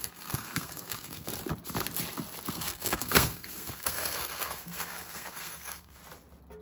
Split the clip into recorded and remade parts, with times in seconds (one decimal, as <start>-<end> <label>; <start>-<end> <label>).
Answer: 0.0-1.3 remade; 1.3-2.5 recorded; 2.5-6.0 remade; 6.0-6.6 recorded